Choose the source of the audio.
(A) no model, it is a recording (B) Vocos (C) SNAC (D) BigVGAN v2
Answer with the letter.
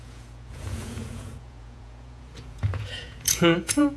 B